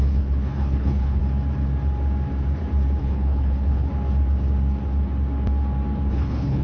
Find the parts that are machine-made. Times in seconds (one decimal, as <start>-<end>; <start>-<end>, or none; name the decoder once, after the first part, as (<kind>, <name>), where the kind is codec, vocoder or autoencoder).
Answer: 0.0-1.2 (codec, HILCodec); 3.0-3.9; 6.1-6.6